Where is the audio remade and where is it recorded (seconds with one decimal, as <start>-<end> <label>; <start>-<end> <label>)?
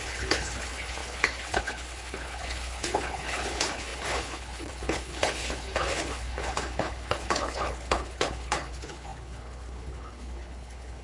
0.0-11.0 remade